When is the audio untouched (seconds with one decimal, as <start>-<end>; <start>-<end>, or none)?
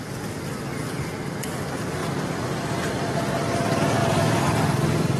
0.0-5.2